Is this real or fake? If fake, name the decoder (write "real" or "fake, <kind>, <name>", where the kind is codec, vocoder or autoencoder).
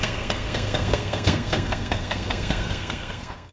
fake, codec, SNAC